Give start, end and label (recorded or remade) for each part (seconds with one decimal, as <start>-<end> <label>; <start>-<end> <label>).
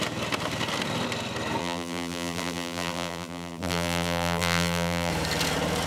0.0-1.6 recorded; 1.6-5.1 remade; 5.1-5.9 recorded